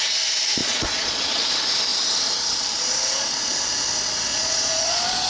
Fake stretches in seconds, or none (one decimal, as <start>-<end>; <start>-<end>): 0.6-1.5; 4.3-5.3